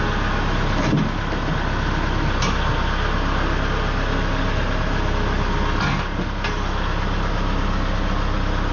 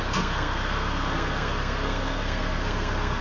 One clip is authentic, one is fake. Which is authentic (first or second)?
first